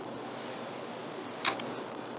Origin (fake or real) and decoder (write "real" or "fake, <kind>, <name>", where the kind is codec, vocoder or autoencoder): real